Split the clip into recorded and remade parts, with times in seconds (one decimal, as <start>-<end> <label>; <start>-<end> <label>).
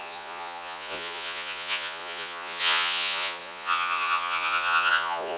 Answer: 0.0-5.4 remade